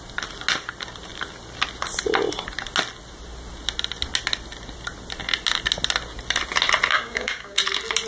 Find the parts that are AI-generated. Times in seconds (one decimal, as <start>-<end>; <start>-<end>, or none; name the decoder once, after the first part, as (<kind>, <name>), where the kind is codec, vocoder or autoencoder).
6.9-7.6 (codec, DAC)